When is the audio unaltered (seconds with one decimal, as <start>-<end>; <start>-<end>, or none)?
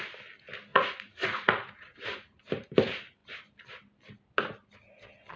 0.0-0.7; 2.5-5.4